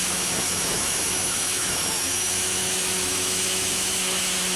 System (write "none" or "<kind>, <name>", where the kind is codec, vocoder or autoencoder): autoencoder, DAC-VAE